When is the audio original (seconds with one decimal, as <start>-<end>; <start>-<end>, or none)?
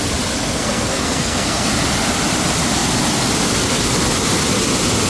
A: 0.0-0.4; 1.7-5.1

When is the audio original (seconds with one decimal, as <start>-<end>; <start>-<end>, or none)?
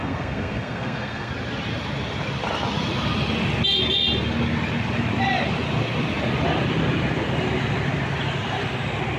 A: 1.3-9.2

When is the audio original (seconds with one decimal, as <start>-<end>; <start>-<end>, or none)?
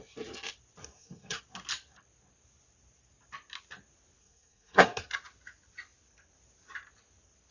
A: 0.0-0.8; 1.4-4.2; 5.1-7.5